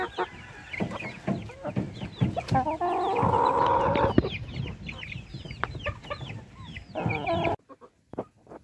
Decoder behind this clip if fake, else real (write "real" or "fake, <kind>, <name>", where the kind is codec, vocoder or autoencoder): real